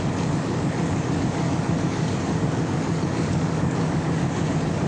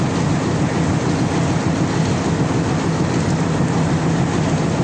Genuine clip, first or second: second